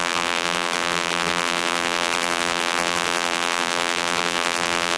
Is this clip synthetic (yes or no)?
yes